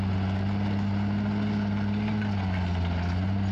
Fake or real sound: real